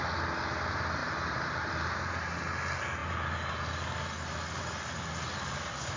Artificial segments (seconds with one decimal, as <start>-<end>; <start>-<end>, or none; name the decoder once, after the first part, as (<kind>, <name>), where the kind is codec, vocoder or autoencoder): 1.0-1.7 (vocoder, BigVGAN v2)